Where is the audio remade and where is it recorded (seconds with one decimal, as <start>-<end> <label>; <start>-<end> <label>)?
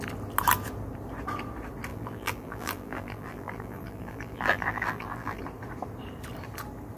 0.0-1.9 recorded; 1.9-5.4 remade; 5.4-7.0 recorded